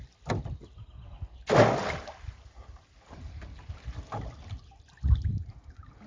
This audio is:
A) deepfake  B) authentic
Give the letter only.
B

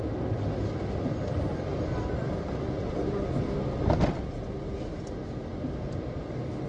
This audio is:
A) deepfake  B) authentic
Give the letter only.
B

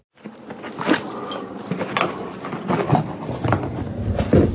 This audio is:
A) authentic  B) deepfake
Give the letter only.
A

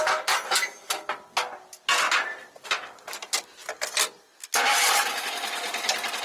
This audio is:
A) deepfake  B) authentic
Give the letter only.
B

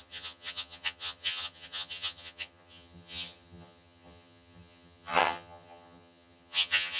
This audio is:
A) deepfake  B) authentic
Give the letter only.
A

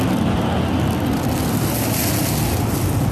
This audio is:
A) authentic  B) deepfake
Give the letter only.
A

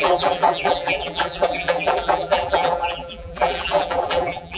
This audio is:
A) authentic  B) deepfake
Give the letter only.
B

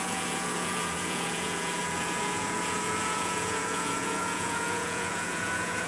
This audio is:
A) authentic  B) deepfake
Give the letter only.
B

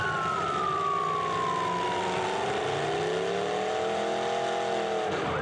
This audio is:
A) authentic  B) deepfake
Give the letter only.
A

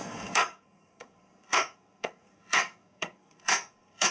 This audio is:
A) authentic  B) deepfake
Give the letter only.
B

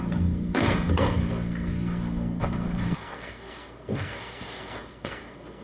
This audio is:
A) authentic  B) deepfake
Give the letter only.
B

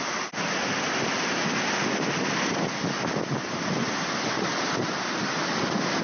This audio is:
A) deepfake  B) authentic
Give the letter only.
B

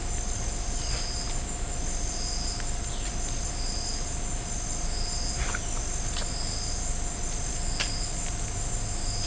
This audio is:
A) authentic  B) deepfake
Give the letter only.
A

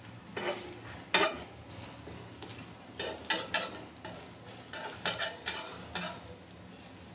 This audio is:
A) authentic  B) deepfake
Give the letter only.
A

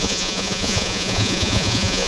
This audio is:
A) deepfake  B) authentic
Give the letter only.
A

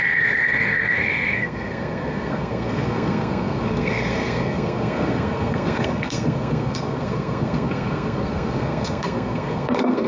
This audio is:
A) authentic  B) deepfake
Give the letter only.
B